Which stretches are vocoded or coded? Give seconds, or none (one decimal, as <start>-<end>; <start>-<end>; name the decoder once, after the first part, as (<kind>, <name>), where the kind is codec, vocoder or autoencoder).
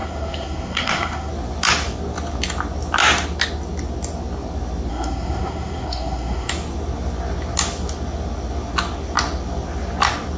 0.0-1.3 (codec, SNAC); 4.9-6.5